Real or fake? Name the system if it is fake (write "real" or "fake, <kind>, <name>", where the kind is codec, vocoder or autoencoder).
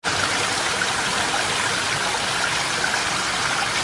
real